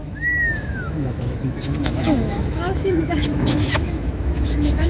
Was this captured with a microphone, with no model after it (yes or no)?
no